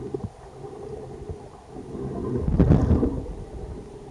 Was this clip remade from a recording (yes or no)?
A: no